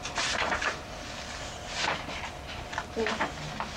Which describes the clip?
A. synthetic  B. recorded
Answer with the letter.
B